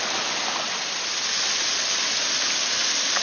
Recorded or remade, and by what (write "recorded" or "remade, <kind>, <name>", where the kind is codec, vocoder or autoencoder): recorded